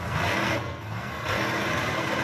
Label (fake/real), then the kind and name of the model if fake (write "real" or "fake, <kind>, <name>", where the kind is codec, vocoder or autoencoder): fake, codec, SNAC